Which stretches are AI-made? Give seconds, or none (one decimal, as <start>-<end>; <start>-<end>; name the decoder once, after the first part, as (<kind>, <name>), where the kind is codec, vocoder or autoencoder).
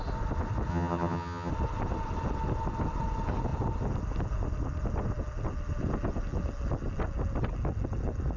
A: 0.7-1.5 (vocoder, HiFi-GAN)